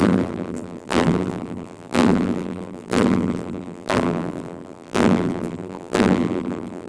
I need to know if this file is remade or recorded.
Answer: remade